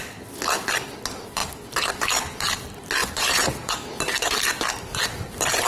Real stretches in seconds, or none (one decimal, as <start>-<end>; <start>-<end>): 0.0-1.4; 2.5-3.0; 3.7-5.7